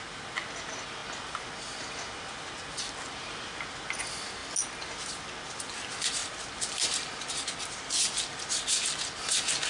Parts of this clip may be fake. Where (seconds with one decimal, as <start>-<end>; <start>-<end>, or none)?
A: none